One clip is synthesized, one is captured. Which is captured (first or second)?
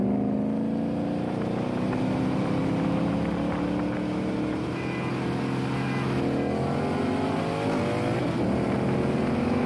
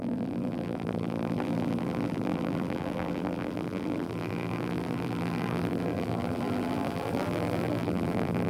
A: first